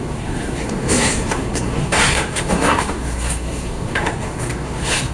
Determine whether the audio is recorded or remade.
remade